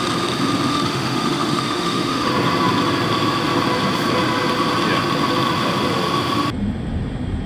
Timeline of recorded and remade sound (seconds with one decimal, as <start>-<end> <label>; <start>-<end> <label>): 0.0-0.7 recorded; 0.7-2.3 remade; 2.3-7.5 recorded